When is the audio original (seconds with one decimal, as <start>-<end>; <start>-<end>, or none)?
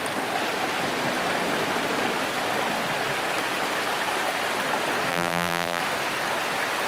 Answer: 0.0-5.1; 5.8-6.9